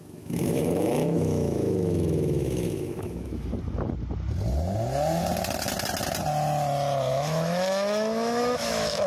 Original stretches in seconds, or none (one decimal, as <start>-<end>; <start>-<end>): 3.5-7.1